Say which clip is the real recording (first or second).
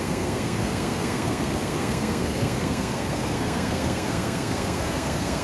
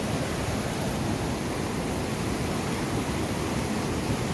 second